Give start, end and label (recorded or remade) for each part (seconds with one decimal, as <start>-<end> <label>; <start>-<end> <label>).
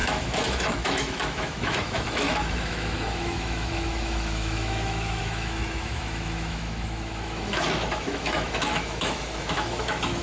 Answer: 0.0-10.2 remade